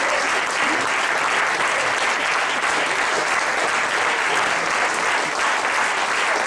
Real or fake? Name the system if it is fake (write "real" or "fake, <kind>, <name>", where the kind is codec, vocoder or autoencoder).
real